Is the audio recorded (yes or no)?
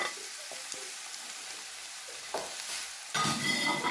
yes